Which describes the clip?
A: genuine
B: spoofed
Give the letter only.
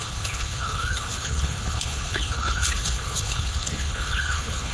B